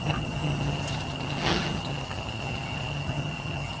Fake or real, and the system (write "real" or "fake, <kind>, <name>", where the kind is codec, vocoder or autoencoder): fake, vocoder, HiFi-GAN